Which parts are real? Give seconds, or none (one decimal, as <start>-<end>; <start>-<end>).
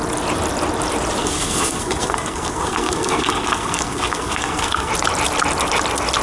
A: 0.0-1.2; 4.9-6.2